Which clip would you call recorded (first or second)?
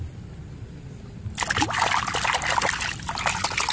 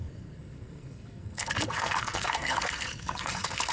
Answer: first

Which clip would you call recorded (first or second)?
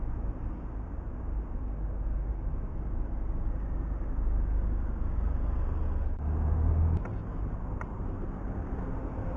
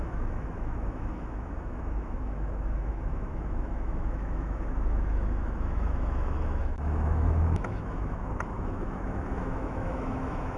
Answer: first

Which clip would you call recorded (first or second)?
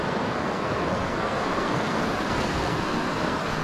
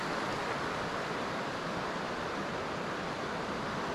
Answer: second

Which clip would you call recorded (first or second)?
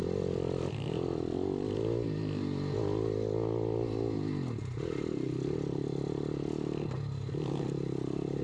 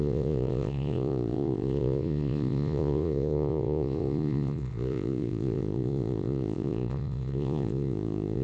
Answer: first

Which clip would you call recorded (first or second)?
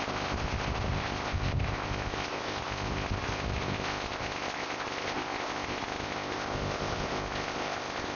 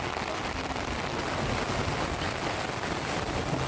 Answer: second